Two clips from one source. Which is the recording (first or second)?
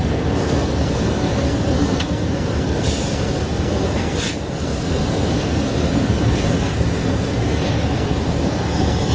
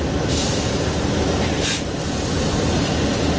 second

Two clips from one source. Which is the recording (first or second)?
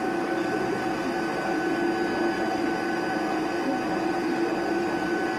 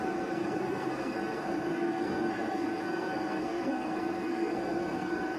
first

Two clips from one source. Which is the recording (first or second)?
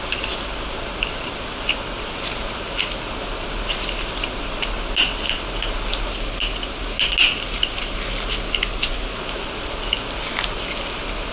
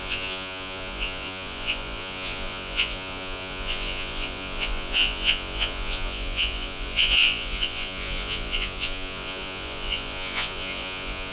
first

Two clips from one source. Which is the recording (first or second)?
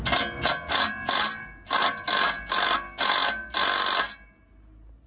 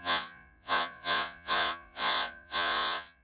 first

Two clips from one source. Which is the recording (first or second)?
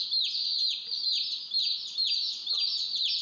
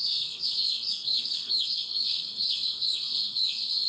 first